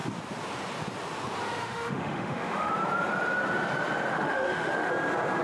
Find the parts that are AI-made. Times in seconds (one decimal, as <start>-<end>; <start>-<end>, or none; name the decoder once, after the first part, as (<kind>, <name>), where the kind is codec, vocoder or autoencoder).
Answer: 1.6-2.7 (autoencoder, DAC-VAE); 4.1-4.9

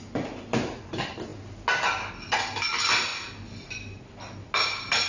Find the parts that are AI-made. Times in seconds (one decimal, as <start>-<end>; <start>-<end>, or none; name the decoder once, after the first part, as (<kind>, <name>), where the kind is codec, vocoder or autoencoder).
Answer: none

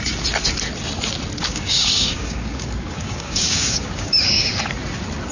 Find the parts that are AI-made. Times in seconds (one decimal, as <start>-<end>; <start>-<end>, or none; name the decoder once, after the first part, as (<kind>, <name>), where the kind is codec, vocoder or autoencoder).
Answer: 1.4-4.6 (codec, DAC)

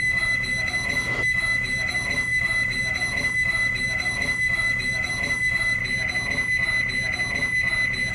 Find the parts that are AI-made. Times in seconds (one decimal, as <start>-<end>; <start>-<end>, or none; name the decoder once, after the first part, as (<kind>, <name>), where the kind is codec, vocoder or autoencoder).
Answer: 0.0-5.8 (autoencoder, DAC-VAE)

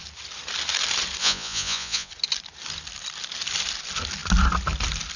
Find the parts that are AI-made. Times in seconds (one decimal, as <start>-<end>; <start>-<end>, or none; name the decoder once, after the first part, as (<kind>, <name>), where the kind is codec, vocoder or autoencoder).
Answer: 1.2-2.1 (vocoder, Vocos)